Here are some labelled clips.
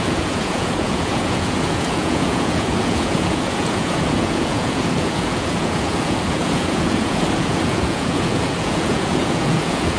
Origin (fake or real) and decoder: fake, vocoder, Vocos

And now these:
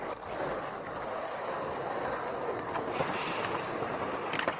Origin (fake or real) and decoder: real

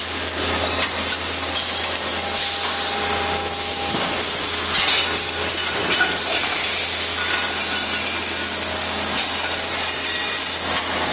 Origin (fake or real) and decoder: real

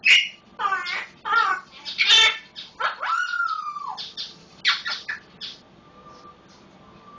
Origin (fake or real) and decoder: real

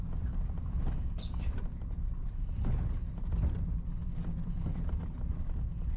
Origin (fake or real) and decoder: real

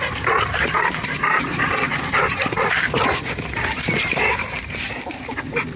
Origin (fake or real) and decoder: real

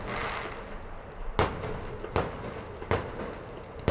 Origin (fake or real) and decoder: real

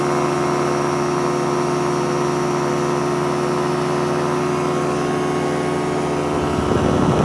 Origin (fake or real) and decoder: real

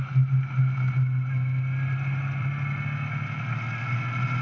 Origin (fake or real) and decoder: real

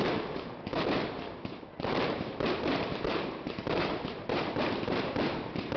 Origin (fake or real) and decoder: fake, vocoder, BigVGAN v2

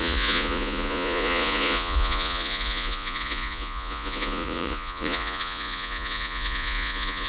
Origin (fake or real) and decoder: fake, vocoder, Vocos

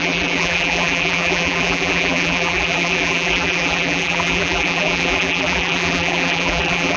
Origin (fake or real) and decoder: fake, vocoder, BigVGAN v2